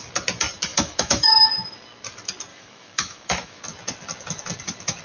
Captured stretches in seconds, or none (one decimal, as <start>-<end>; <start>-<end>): 0.0-0.7; 1.5-2.5; 3.6-5.0